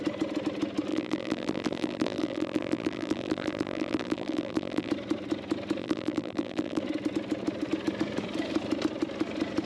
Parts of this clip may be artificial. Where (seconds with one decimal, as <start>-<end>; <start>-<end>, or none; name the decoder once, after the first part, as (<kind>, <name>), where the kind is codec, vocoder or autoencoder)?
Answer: 0.9-4.9 (vocoder, BigVGAN v2); 5.8-6.8